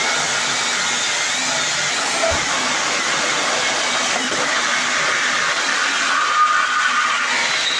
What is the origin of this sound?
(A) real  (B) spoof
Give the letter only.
A